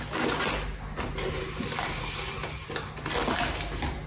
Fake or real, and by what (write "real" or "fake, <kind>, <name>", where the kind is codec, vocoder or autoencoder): real